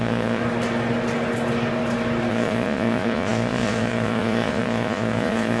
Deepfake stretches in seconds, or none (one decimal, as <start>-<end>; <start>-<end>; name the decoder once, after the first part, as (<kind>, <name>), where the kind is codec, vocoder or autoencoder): 0.0-0.4 (vocoder, Vocos); 2.3-5.6